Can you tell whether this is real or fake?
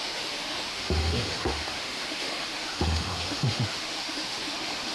fake